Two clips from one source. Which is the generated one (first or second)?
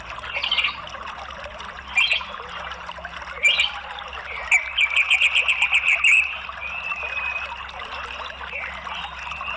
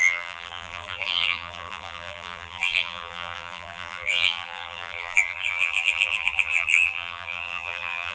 second